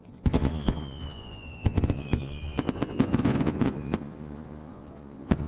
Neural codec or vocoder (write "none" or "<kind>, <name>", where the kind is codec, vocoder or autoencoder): vocoder, Vocos